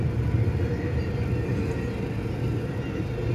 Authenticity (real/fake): real